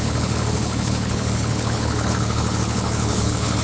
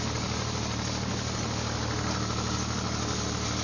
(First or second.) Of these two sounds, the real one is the second